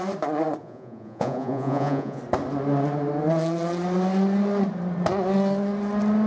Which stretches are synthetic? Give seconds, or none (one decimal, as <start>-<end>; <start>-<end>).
0.6-2.2